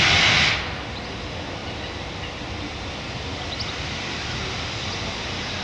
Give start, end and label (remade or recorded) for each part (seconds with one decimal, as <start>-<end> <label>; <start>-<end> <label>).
0.0-5.6 recorded